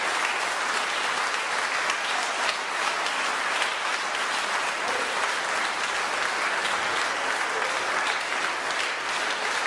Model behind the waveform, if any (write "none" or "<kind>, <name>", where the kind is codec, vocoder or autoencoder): none